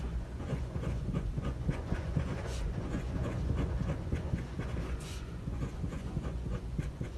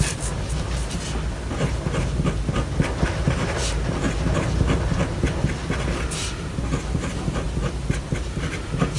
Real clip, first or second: second